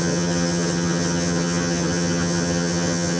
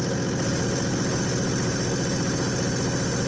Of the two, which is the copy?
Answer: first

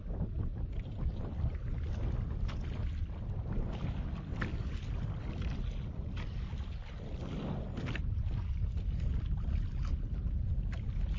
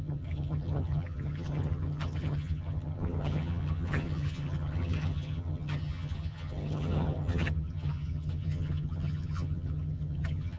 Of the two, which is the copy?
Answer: second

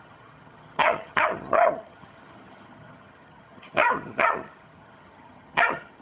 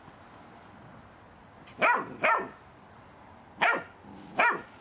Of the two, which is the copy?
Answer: first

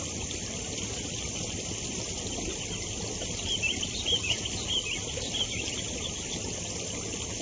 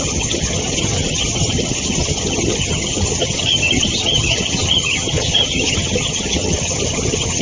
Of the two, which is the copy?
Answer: second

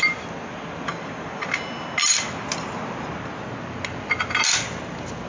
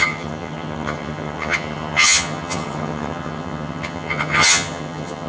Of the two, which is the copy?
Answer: second